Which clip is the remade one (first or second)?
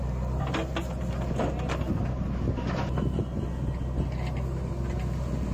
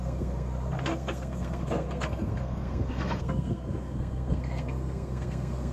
second